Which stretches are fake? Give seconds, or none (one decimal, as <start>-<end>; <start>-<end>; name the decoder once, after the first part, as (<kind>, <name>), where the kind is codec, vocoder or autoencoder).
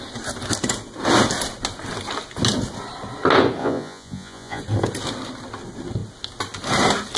3.6-4.6 (vocoder, Vocos)